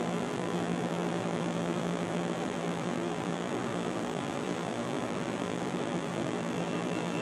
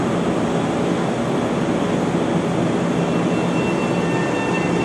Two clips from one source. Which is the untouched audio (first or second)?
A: second